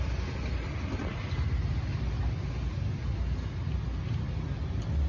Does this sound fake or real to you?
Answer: real